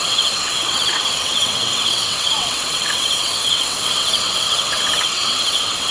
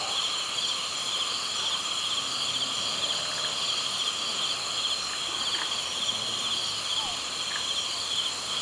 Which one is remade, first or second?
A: first